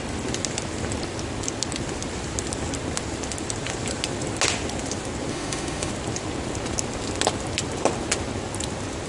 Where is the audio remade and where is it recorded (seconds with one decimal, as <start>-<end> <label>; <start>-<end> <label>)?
0.0-5.3 recorded; 5.3-5.9 remade; 5.9-9.1 recorded